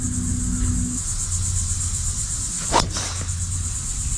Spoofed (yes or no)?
no